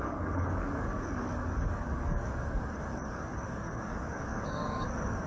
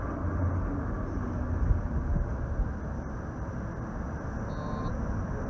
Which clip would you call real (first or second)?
second